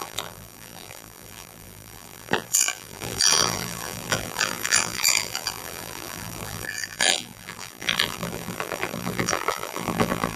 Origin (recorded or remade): remade